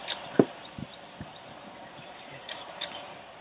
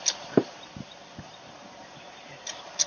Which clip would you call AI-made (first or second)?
first